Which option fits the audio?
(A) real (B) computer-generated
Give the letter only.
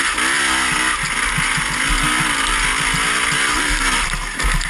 A